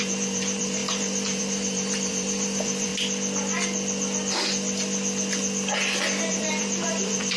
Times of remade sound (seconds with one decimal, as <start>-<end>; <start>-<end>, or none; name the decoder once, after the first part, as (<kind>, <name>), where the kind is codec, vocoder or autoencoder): 0.0-2.9 (vocoder, BigVGAN v2); 6.2-7.4